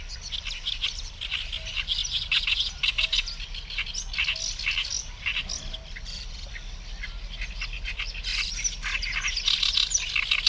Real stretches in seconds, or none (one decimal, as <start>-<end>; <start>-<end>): 0.0-10.5